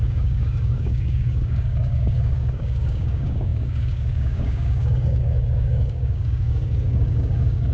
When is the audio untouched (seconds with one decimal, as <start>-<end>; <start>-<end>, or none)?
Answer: none